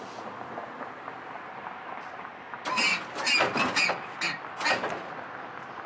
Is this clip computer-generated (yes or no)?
no